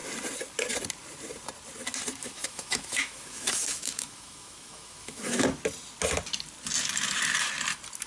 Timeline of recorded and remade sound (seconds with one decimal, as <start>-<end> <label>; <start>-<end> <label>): 0.0-2.2 recorded; 2.2-5.4 remade; 5.4-8.1 recorded